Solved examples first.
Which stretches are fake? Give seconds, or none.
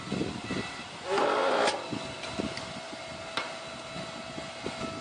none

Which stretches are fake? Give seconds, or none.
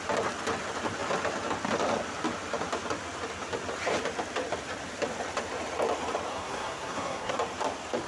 6.3-7.3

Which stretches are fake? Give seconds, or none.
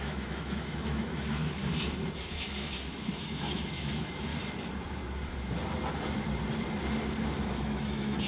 0.0-1.6; 2.2-4.3; 7.6-8.3